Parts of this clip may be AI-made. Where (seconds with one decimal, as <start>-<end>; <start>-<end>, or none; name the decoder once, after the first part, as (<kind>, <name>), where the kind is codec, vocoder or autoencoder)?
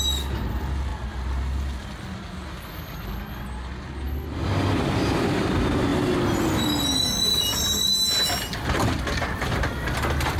none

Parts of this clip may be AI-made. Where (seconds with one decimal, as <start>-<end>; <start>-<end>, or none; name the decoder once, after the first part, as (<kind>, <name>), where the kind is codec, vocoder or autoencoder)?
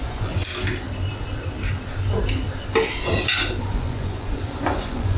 0.0-0.5 (vocoder, Vocos); 3.6-5.2